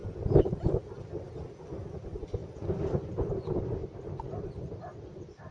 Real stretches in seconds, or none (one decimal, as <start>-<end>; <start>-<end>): 0.0-2.4; 3.1-3.8; 4.5-5.5